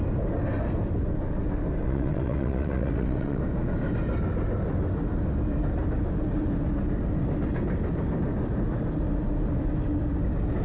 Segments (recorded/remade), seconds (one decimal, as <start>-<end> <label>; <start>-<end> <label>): 0.0-1.8 recorded; 1.8-3.4 remade; 3.4-10.6 recorded